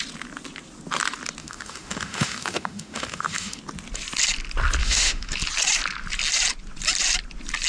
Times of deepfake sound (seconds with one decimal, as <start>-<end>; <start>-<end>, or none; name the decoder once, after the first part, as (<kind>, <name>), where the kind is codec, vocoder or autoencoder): 1.4-3.6 (autoencoder, DAC-VAE); 4.8-5.3